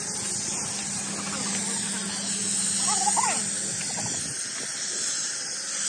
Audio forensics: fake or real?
real